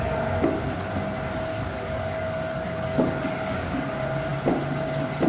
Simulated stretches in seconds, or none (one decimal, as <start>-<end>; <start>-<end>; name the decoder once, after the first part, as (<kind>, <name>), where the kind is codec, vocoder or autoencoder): 1.5-3.9 (codec, DAC)